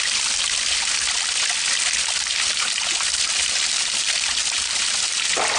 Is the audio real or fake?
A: real